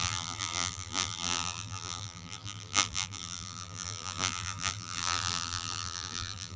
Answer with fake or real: fake